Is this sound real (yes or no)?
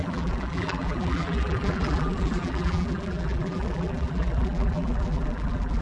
no